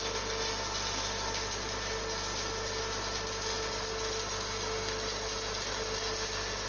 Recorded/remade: recorded